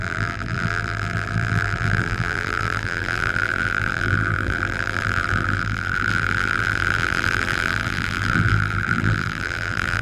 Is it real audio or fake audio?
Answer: fake